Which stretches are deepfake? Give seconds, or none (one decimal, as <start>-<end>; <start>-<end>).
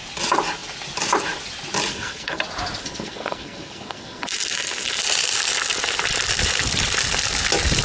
1.9-2.4; 2.8-5.0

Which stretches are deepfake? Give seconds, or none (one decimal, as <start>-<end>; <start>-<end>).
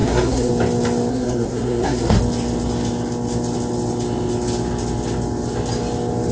0.0-0.5; 1.1-2.2